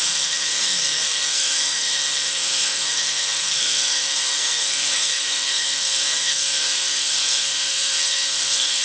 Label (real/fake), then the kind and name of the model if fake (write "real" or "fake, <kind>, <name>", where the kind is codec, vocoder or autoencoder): fake, codec, SNAC